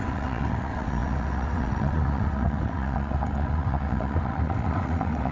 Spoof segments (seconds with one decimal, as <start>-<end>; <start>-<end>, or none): 0.0-5.3